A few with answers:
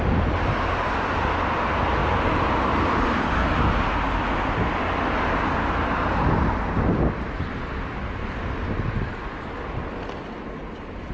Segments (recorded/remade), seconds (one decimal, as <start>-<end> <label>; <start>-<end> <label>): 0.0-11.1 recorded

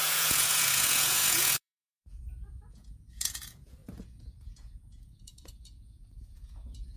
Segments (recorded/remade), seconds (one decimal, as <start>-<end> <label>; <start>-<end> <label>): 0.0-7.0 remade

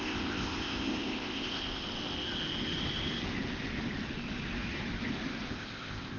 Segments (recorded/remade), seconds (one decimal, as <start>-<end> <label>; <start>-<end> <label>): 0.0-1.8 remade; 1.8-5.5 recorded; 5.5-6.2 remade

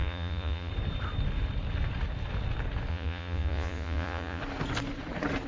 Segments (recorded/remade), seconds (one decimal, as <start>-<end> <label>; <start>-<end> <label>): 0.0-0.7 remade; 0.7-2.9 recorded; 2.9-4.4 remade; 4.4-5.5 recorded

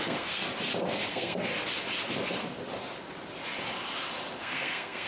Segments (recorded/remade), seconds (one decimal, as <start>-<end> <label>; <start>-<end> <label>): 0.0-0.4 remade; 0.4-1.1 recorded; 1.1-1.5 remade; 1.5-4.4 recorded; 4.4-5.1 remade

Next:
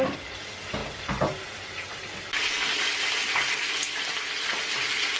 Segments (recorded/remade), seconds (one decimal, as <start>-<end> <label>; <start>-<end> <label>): 0.0-5.2 recorded